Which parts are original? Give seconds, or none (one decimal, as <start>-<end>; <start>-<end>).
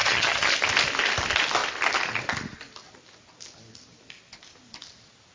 0.5-5.3